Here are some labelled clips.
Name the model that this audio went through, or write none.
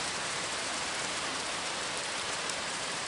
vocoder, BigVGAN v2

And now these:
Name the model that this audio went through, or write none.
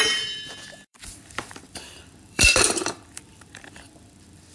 vocoder, BigVGAN v2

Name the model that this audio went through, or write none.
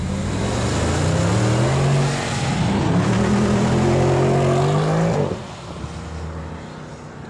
none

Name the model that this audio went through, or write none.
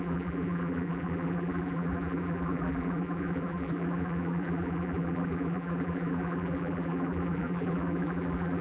vocoder, BigVGAN v2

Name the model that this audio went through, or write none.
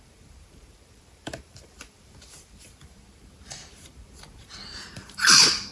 vocoder, BigVGAN v2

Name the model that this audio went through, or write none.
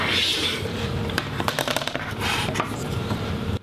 vocoder, BigVGAN v2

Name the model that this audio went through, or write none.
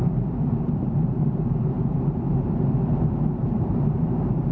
vocoder, BigVGAN v2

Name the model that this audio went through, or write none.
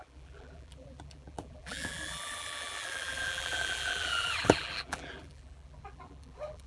vocoder, BigVGAN v2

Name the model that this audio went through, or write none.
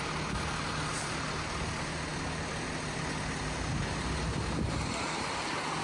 none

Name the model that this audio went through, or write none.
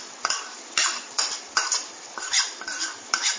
vocoder, BigVGAN v2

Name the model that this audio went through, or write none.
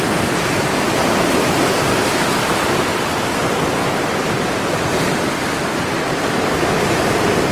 vocoder, BigVGAN v2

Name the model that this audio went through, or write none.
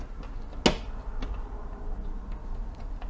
none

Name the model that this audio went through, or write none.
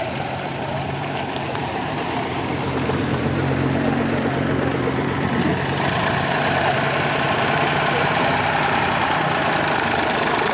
vocoder, BigVGAN v2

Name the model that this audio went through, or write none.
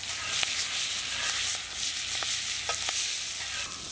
none